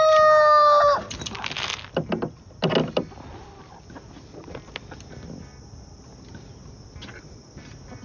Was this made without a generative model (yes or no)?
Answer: yes